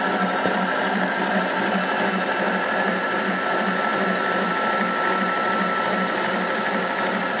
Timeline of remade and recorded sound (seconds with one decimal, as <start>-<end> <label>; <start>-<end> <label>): 0.0-7.4 recorded